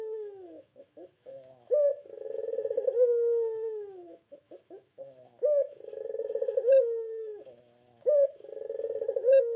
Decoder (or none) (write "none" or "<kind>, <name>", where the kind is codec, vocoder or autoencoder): autoencoder, DAC-VAE